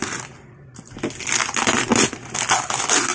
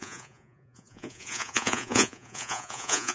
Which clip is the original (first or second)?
first